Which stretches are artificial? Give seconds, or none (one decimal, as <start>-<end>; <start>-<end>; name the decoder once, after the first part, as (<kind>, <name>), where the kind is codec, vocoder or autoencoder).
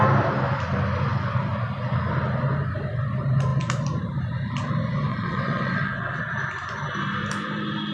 5.1-6.2 (vocoder, WaveNeXt)